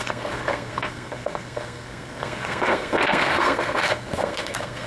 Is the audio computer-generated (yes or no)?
yes